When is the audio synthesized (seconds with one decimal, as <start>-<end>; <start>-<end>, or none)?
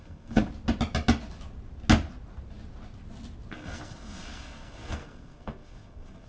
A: 0.0-0.4; 3.5-6.3